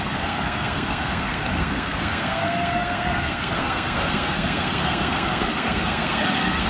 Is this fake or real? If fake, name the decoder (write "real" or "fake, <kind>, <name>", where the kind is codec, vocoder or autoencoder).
fake, codec, SNAC